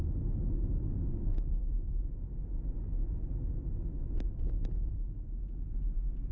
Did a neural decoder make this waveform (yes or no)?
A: no